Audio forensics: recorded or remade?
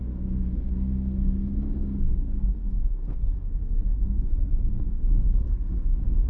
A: remade